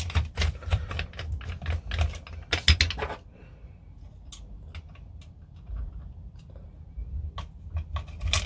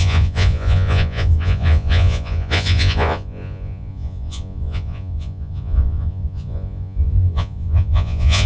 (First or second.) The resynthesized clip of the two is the second